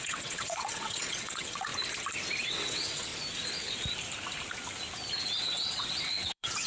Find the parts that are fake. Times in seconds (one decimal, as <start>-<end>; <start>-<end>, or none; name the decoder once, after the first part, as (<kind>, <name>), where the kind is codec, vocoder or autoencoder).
0.0-1.7 (vocoder, WaveNeXt); 2.5-3.1; 5.4-6.7